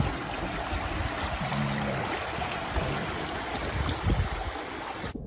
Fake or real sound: real